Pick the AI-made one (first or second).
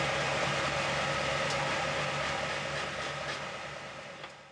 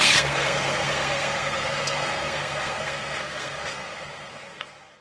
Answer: second